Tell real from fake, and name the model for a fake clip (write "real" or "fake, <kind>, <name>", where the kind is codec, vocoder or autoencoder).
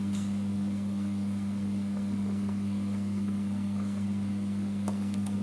fake, codec, SNAC